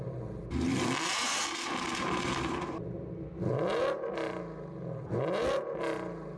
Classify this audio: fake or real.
real